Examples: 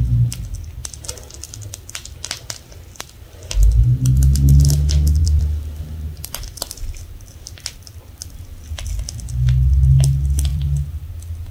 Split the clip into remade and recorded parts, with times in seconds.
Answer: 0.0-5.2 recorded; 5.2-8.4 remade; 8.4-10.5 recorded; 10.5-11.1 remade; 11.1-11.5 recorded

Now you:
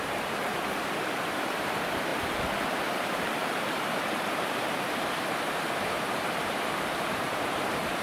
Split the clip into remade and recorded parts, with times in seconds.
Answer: 0.0-2.1 remade; 2.1-2.9 recorded; 2.9-8.0 remade

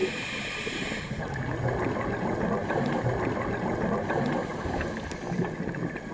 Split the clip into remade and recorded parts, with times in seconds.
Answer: 0.0-1.0 remade; 1.0-2.6 recorded; 2.6-3.1 remade; 3.1-4.4 recorded; 4.4-5.0 remade; 5.0-6.1 recorded

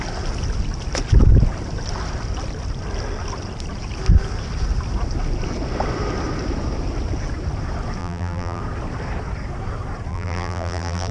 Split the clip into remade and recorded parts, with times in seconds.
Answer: 0.0-8.0 recorded; 8.0-8.6 remade; 8.6-10.1 recorded; 10.1-11.1 remade

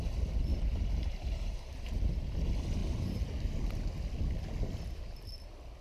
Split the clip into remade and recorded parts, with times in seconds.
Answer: 0.0-0.5 recorded; 0.5-2.3 remade; 2.3-2.8 recorded; 2.8-3.3 remade; 3.3-5.8 recorded

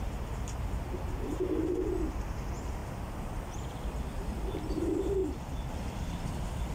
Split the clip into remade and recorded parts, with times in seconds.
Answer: 0.0-5.2 remade; 5.2-5.7 recorded; 5.7-6.7 remade

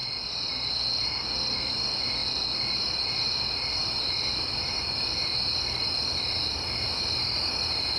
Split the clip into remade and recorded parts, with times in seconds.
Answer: 0.0-8.0 recorded

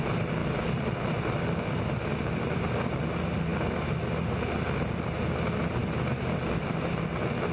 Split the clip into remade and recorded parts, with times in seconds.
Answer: 0.0-0.4 recorded; 0.4-3.0 remade; 3.0-7.5 recorded